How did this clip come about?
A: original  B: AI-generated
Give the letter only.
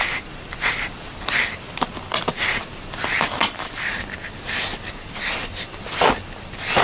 A